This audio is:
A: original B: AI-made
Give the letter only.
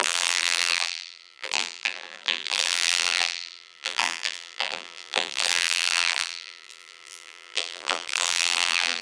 B